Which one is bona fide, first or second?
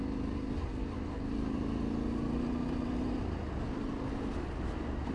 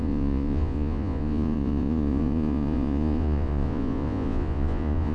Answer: first